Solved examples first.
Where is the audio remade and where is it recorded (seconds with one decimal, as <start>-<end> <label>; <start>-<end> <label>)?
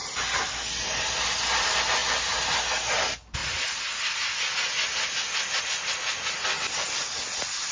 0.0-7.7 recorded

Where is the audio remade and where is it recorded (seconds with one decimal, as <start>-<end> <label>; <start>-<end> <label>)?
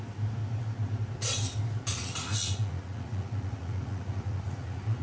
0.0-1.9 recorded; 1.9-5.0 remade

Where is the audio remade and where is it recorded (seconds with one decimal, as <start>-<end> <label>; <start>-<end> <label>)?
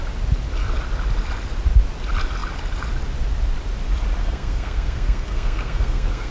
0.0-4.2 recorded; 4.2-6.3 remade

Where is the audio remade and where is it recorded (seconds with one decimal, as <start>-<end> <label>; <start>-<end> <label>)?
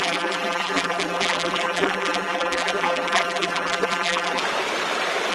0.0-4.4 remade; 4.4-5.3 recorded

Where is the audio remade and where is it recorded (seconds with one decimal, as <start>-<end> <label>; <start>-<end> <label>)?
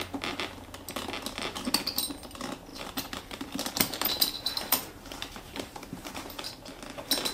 0.0-2.7 recorded; 2.7-6.1 remade; 6.1-7.3 recorded